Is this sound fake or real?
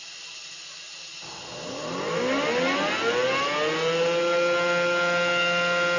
real